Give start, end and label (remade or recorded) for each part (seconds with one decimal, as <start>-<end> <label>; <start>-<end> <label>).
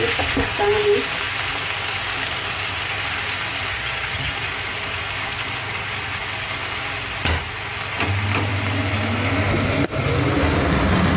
0.0-3.7 recorded; 3.7-4.3 remade; 4.3-11.2 recorded